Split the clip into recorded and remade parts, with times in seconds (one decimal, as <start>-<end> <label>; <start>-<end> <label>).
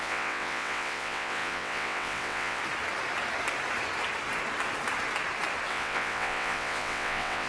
0.0-2.6 remade; 2.6-5.7 recorded; 5.7-7.5 remade